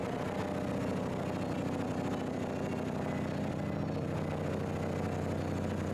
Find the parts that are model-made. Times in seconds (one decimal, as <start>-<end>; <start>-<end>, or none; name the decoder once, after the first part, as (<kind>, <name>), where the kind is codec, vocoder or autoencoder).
none